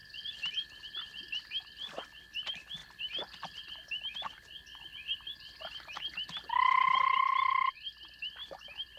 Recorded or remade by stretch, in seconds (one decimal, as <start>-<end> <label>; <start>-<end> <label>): 0.0-2.0 remade; 2.0-2.8 recorded; 2.8-7.2 remade; 7.2-9.0 recorded

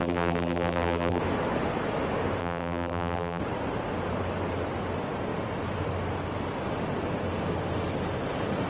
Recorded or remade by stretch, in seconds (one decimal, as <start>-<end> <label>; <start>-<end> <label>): 0.0-1.2 remade; 1.2-2.4 recorded; 2.4-3.4 remade; 3.4-8.7 recorded

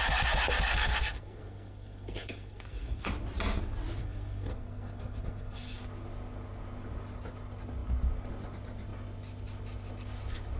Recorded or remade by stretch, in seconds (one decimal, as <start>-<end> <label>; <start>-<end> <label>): 0.0-0.7 recorded; 0.7-3.1 remade; 3.1-4.0 recorded; 4.0-5.8 remade; 5.8-10.6 recorded

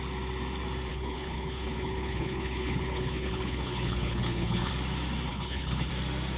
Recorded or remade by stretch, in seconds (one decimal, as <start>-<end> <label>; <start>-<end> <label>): 0.0-0.9 recorded; 0.9-4.7 remade; 4.7-5.3 recorded; 5.3-5.9 remade; 5.9-6.4 recorded